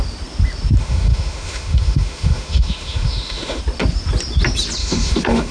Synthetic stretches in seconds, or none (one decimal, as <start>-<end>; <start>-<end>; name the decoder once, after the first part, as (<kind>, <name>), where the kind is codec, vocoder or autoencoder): 0.8-3.6 (autoencoder, DAC-VAE); 4.8-5.5

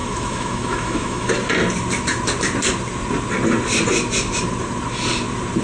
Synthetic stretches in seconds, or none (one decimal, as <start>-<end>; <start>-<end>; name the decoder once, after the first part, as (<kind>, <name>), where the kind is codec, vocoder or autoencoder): 0.0-1.3 (autoencoder, DAC-VAE)

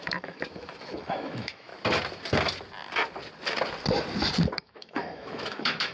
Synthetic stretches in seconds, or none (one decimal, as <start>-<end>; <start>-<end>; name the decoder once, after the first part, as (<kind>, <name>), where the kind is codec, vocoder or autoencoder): 0.0-1.7 (autoencoder, DAC-VAE); 4.6-5.9